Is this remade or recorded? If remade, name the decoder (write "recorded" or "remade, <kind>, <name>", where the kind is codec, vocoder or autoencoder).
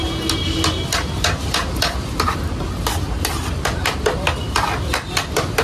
recorded